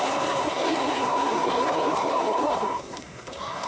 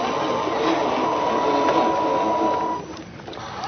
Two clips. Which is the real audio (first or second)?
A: second